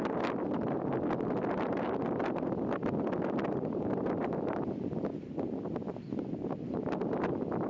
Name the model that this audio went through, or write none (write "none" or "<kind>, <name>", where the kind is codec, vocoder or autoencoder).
none